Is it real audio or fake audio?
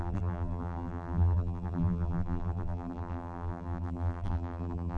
fake